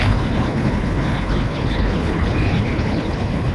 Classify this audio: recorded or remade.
remade